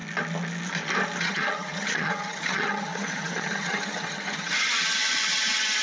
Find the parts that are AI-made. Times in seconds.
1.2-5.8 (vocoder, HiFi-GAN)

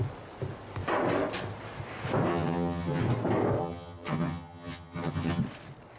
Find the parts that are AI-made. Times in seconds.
2.3-3.0 (vocoder, HiFi-GAN); 3.6-5.4

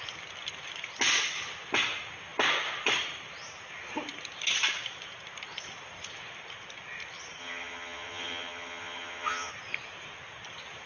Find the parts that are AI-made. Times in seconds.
7.4-9.5 (vocoder, HiFi-GAN)

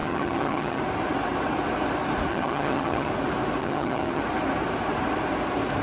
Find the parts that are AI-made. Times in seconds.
0.0-0.8 (vocoder, HiFi-GAN); 2.3-3.1; 3.6-4.2

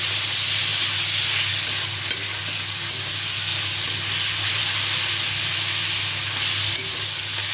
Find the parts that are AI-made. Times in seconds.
none

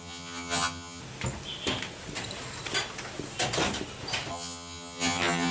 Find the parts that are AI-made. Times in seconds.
0.0-1.0 (vocoder, HiFi-GAN); 4.3-5.5

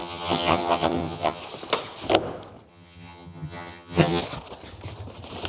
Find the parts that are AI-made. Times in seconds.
0.0-1.4 (vocoder, HiFi-GAN); 2.7-4.2